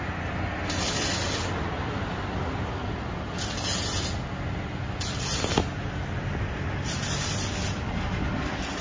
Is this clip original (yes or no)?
yes